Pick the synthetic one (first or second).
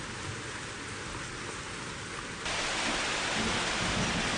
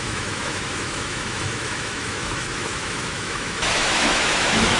second